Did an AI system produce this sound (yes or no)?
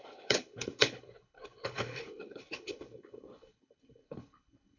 yes